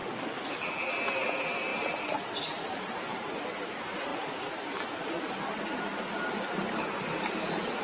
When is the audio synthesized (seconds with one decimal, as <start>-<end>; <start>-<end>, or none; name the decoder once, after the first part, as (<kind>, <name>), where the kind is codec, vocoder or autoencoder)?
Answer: none